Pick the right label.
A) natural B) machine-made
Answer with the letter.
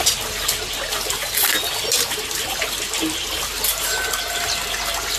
A